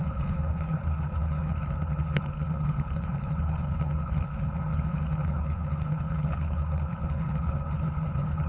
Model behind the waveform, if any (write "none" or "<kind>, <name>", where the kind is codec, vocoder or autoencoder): codec, HILCodec